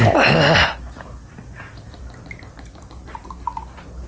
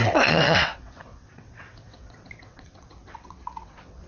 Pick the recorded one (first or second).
first